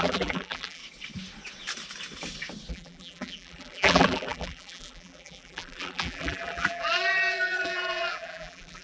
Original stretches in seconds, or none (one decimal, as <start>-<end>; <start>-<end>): 0.8-2.7